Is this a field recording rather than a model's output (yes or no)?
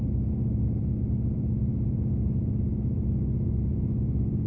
yes